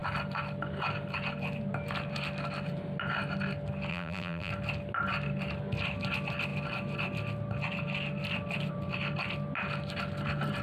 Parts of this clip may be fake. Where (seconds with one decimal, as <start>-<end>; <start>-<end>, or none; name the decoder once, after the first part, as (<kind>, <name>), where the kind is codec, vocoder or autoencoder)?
3.9-4.5 (vocoder, BigVGAN v2)